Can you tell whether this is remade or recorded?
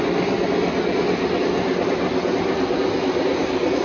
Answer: recorded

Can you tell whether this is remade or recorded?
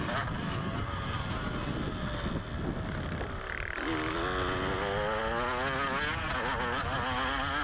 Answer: recorded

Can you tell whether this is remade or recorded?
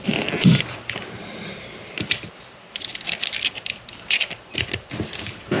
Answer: remade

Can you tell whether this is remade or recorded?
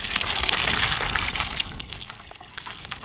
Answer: remade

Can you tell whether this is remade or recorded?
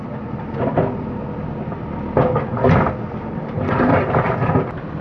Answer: recorded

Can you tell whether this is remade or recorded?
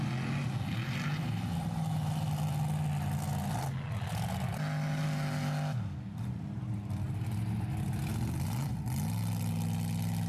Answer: recorded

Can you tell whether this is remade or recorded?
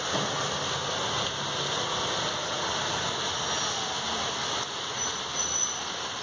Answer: recorded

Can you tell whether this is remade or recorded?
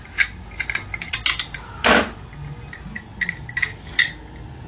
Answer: recorded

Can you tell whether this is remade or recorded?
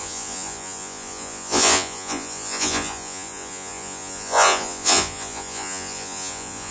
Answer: remade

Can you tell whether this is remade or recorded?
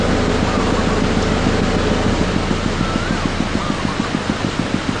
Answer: recorded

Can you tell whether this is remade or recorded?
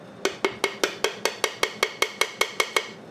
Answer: recorded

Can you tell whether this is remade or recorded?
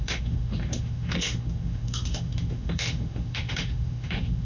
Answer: remade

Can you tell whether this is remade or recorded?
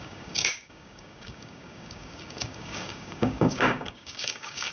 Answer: remade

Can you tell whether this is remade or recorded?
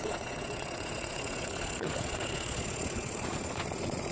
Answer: remade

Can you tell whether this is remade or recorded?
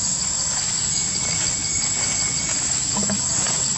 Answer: recorded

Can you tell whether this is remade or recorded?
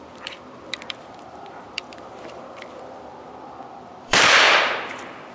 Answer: remade